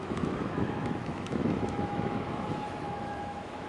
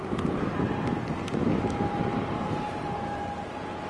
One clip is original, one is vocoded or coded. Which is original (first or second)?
second